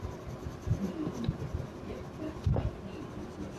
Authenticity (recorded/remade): recorded